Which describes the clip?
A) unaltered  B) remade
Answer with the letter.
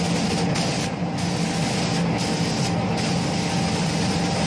A